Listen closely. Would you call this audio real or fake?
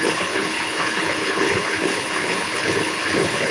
fake